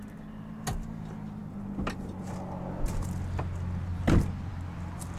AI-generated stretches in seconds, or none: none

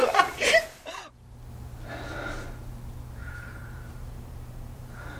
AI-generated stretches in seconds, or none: 0.0-1.0 (vocoder, BigVGAN v2); 3.2-5.2

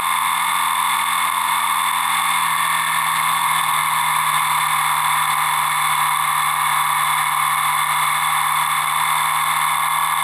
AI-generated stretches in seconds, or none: none

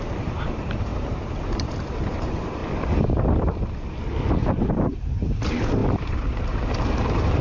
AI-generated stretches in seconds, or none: 0.0-2.6 (vocoder, BigVGAN v2); 4.4-7.4

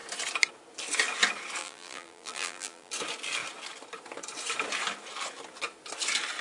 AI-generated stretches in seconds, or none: 1.6-2.9 (vocoder, BigVGAN v2)

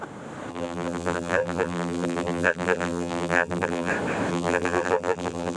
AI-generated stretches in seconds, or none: 0.5-3.9 (vocoder, BigVGAN v2); 4.3-5.6